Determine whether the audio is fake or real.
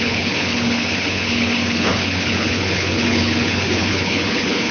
fake